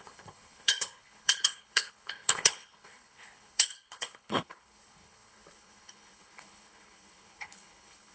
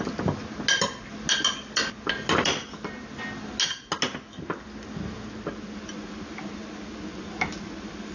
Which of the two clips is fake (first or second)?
first